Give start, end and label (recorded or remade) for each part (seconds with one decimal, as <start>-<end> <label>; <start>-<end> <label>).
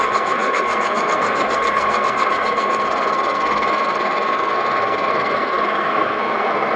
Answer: 0.0-6.8 remade